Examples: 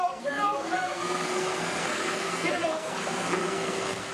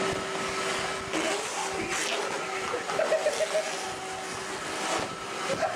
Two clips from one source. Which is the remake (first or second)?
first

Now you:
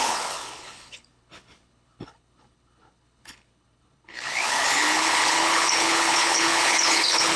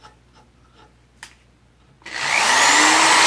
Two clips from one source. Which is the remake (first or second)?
first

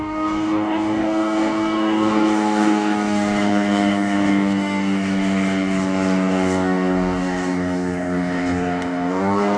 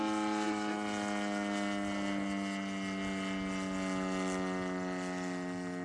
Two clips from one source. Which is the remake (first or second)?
first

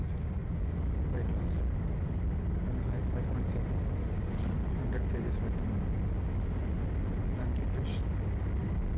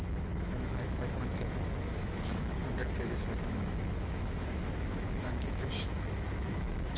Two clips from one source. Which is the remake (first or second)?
second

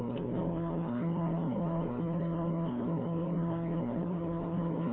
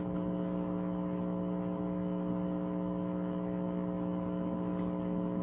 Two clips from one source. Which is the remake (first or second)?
first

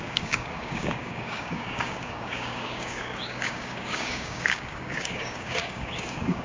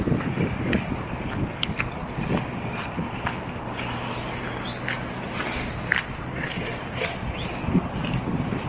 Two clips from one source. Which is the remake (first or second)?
first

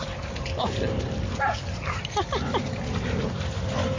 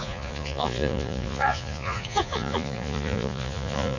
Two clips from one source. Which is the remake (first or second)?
second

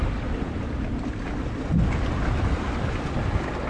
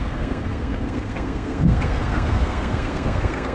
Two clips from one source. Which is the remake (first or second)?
second